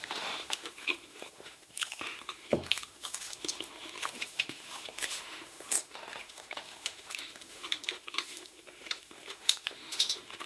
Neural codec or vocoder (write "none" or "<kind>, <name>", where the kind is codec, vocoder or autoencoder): autoencoder, DAC-VAE